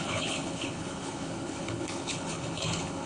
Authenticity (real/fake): fake